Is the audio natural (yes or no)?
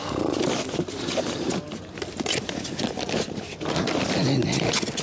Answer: yes